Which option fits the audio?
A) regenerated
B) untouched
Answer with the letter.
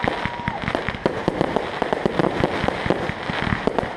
B